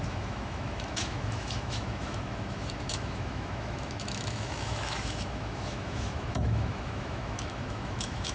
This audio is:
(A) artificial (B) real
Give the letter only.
A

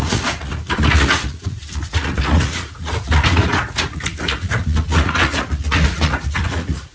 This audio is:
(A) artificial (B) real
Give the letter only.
A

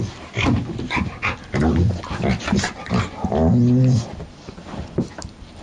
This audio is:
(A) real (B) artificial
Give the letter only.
A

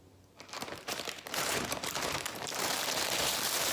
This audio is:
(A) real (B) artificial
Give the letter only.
B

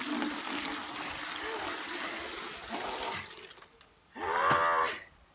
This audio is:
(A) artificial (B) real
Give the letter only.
B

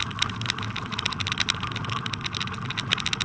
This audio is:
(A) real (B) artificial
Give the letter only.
A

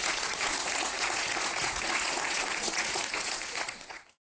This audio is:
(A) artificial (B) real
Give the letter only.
A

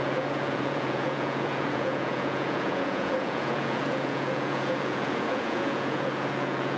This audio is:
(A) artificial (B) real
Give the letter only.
A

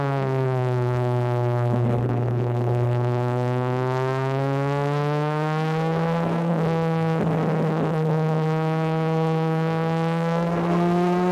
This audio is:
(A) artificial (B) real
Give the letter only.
A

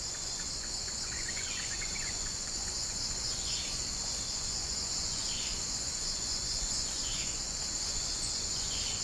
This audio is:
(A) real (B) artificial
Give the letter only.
B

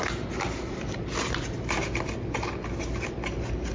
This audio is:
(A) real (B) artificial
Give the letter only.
A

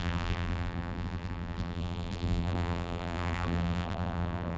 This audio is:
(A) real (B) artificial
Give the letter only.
B